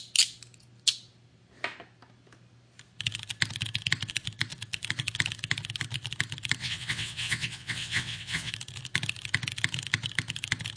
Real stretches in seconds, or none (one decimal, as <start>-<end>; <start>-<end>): 0.0-6.6; 8.5-10.8